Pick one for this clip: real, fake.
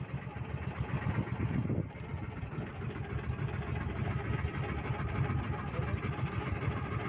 real